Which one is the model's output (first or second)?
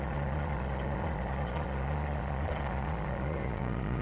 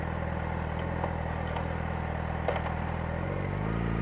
first